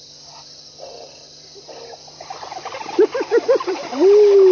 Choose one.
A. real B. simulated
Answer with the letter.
A